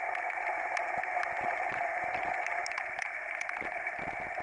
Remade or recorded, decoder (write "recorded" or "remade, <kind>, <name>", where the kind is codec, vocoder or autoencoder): recorded